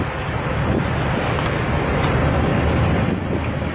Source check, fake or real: real